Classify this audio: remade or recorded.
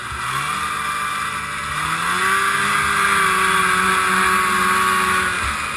recorded